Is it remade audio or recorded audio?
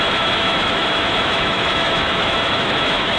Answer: remade